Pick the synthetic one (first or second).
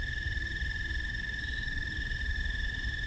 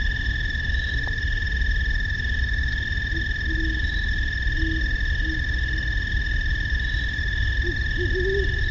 first